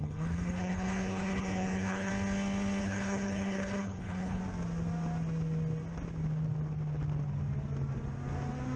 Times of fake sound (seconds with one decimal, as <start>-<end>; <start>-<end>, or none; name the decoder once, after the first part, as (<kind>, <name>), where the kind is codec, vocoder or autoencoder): 0.0-2.1 (codec, HILCodec); 2.8-4.4